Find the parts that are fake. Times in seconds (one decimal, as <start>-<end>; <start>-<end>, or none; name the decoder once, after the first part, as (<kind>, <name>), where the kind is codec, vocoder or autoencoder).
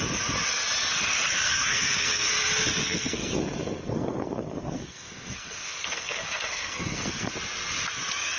0.9-2.3 (codec, SNAC); 2.7-7.3